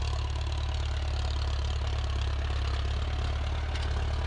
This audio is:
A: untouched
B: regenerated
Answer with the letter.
A